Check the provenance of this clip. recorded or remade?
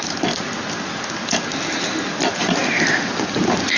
recorded